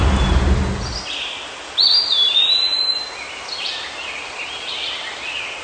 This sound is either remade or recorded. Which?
recorded